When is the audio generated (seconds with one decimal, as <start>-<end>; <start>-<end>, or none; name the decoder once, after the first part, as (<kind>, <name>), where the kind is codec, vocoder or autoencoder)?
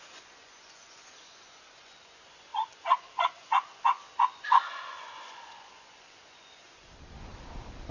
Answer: 0.0-7.3 (vocoder, Vocos)